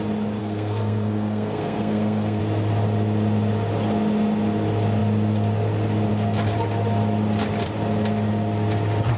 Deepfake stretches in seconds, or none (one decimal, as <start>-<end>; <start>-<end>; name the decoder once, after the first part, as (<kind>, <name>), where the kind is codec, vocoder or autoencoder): 0.4-2.4 (codec, SNAC)